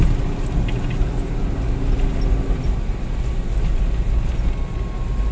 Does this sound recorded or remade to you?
recorded